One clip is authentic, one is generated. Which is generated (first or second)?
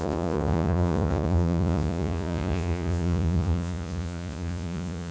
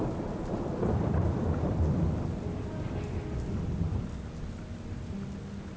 first